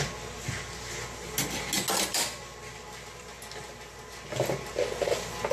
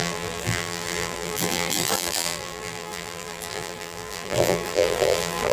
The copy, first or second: second